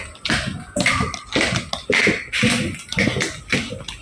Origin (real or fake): real